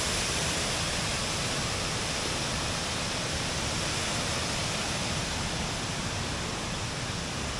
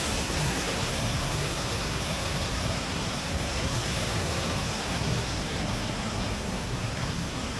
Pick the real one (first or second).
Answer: first